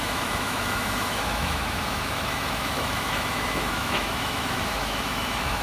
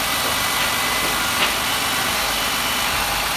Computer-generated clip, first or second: first